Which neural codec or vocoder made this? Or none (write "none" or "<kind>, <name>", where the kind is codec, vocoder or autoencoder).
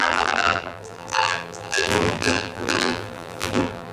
vocoder, BigVGAN v2